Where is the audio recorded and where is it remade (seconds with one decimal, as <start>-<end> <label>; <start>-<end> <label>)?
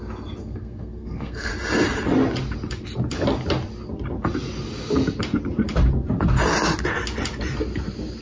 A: 0.0-0.4 recorded; 0.4-1.5 remade; 1.5-8.2 recorded